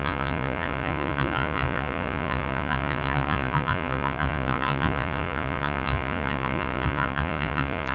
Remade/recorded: remade